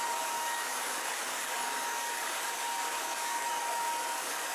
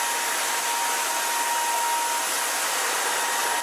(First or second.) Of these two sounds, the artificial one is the first